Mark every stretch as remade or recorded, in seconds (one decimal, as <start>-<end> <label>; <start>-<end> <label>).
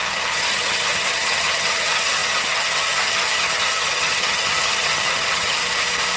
0.0-5.6 remade; 5.6-6.2 recorded